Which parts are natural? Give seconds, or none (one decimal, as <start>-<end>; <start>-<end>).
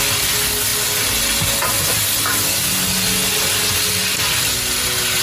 0.0-5.2